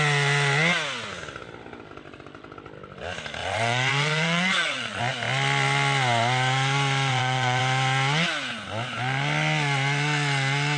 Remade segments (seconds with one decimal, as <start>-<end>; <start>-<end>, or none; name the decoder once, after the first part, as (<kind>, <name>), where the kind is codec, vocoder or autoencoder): 3.4-5.0 (vocoder, Vocos); 7.1-7.6